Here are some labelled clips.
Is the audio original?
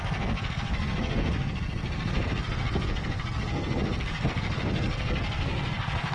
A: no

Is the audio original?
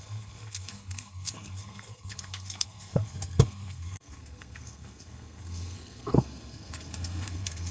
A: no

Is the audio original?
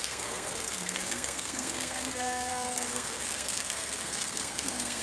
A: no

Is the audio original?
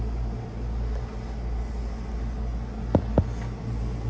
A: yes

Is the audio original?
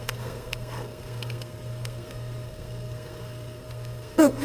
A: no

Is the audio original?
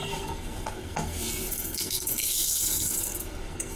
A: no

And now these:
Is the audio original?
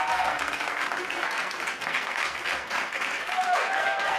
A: no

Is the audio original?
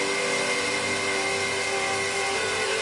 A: yes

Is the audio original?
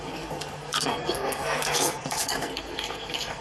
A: no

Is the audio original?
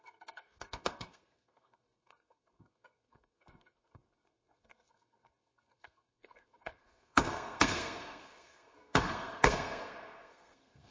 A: no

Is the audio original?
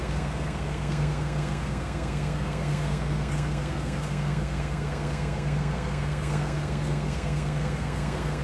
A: no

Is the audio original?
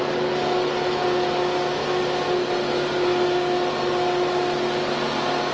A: yes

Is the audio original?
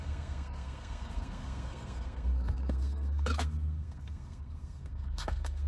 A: no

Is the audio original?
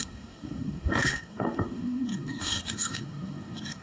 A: no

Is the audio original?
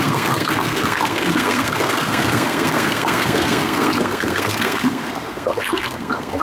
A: no